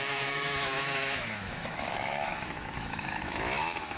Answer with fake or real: fake